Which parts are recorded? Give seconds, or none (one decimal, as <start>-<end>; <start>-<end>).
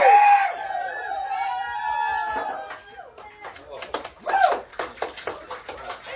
0.0-4.7; 5.4-6.2